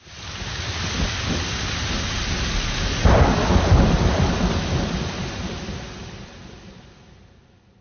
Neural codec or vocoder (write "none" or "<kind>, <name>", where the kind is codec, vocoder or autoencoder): none